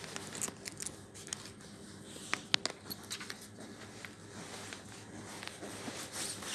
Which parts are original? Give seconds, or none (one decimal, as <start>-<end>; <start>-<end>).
0.0-6.5